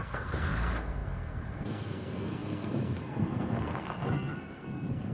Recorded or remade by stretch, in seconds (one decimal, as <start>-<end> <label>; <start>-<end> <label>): 0.0-5.1 remade